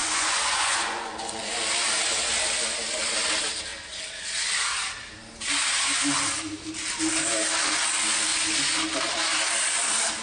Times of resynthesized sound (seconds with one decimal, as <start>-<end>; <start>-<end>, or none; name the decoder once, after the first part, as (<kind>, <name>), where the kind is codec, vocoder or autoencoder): 0.0-1.5 (vocoder, Vocos)